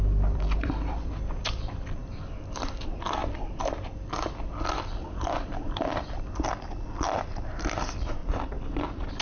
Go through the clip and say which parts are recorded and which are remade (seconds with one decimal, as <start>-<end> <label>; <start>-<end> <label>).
0.0-8.2 remade; 8.2-9.2 recorded